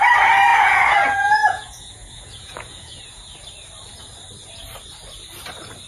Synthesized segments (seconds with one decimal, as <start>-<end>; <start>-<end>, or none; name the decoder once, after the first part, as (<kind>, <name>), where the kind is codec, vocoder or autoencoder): 0.5-3.3 (vocoder, Vocos)